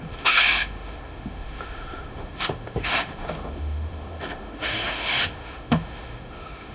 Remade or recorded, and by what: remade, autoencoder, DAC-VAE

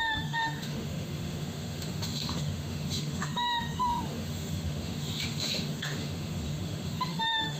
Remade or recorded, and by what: remade, autoencoder, DAC-VAE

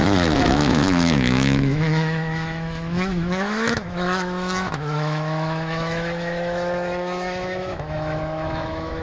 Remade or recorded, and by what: remade, autoencoder, DAC-VAE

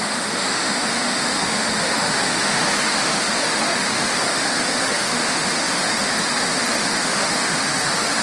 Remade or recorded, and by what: remade, autoencoder, DAC-VAE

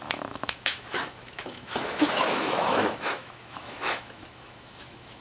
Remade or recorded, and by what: remade, autoencoder, DAC-VAE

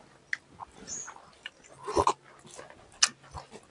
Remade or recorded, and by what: recorded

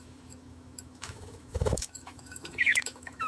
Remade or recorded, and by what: remade, autoencoder, DAC-VAE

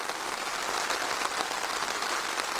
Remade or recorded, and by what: recorded